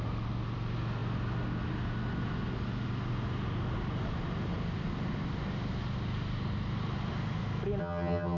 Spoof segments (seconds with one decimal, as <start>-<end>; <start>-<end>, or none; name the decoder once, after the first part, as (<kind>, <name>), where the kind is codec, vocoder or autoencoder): 7.8-8.4 (vocoder, HiFi-GAN)